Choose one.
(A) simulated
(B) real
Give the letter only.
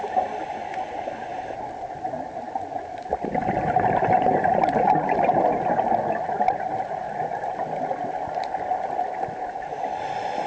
B